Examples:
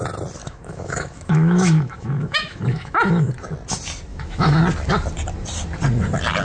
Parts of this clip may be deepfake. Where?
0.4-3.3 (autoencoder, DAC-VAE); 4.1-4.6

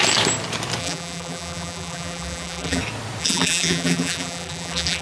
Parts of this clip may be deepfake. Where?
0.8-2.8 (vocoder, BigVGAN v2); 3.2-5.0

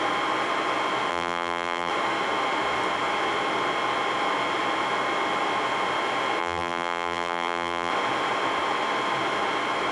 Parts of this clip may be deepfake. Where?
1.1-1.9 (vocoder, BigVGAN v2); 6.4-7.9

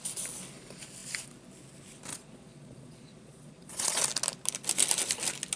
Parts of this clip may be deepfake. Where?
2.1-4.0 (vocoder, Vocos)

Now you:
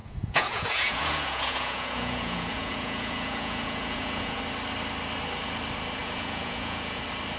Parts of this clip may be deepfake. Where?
0.0-4.4 (vocoder, Vocos); 6.0-7.0

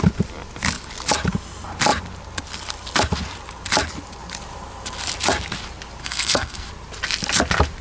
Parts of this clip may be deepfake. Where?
6.0-6.7 (codec, SNAC)

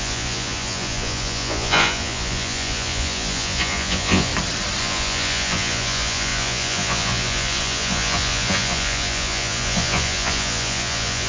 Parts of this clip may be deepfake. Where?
0.0-4.3 (vocoder, Vocos); 4.8-11.3